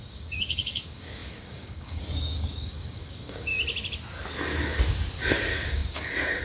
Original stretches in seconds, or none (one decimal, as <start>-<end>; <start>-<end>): 3.5-5.3

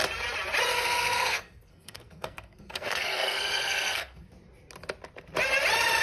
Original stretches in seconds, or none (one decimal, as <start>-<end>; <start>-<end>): 0.0-0.7; 4.3-6.0